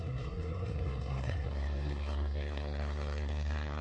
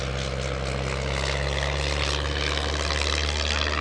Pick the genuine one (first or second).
second